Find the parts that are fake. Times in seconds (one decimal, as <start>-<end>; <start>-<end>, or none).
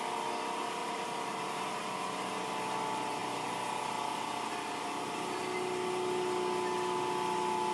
none